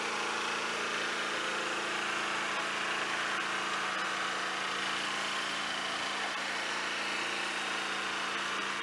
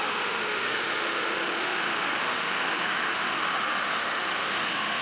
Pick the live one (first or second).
first